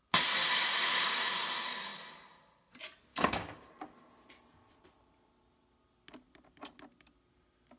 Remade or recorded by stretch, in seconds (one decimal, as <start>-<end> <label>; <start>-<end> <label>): 0.0-0.4 recorded; 0.4-1.3 remade; 1.3-3.1 recorded; 3.1-3.7 remade; 3.7-7.8 recorded